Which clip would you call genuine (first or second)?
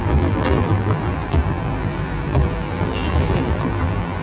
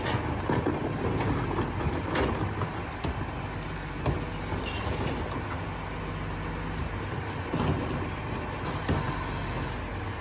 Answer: second